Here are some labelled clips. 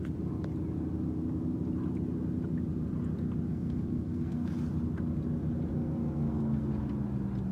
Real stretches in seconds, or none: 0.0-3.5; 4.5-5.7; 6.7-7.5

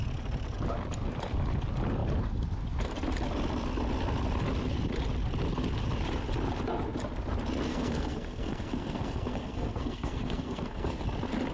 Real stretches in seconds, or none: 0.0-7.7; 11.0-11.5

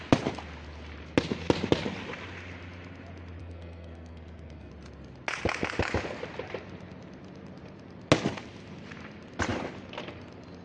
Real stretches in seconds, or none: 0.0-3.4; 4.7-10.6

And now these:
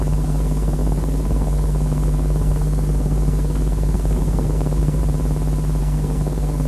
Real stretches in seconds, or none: 5.0-5.8

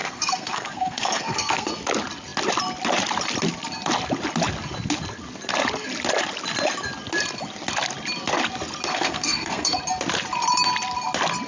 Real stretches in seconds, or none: 1.7-8.9; 9.8-11.5

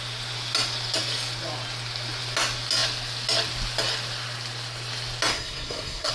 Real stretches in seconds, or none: 0.0-5.3

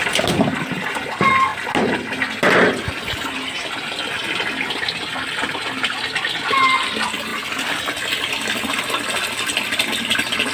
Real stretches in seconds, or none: 0.0-10.5